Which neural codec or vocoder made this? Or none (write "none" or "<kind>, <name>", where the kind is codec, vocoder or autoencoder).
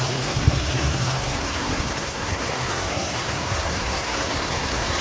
codec, SNAC